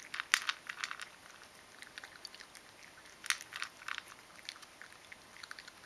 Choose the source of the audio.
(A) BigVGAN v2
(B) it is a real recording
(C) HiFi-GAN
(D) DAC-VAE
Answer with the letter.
B